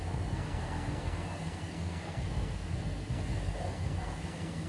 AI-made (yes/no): yes